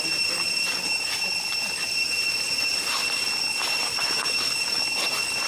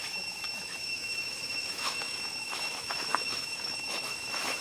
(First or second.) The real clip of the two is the first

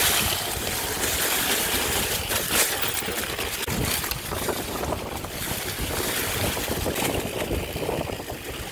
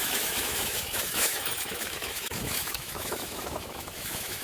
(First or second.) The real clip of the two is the first